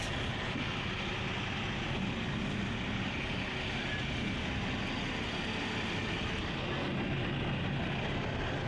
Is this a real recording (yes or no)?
yes